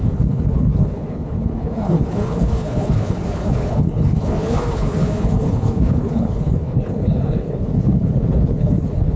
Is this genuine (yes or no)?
no